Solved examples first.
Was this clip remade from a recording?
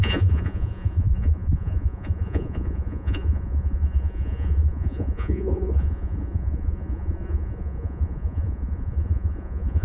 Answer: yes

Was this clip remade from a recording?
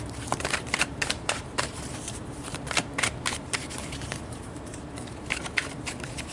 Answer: yes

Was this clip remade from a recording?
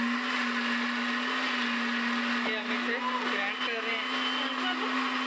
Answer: no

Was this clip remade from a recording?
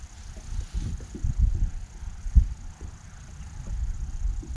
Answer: no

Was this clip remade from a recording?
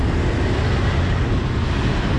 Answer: yes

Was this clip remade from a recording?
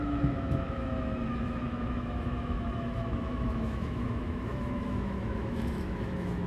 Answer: yes